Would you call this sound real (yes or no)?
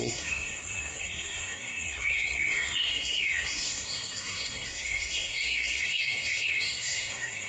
no